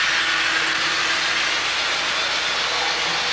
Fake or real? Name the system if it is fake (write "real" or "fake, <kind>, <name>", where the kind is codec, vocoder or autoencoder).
real